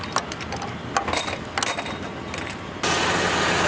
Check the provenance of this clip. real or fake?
real